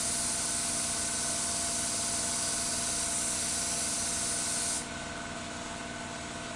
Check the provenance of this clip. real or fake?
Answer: real